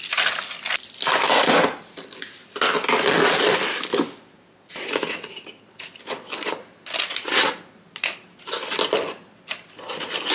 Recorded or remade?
recorded